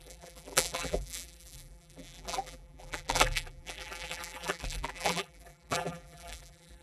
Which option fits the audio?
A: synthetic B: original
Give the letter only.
A